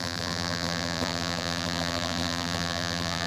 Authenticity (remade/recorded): remade